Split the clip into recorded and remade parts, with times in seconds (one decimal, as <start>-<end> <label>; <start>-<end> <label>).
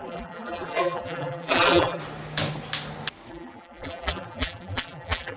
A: 0.0-2.0 remade; 2.0-3.3 recorded; 3.3-5.4 remade